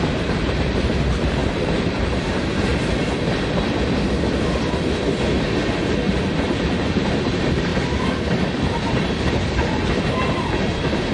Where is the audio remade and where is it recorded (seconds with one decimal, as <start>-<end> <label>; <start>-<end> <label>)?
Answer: 0.0-2.7 remade; 2.7-6.1 recorded; 6.1-7.7 remade; 7.7-8.9 recorded; 8.9-11.1 remade